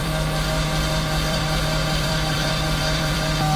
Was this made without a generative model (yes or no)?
no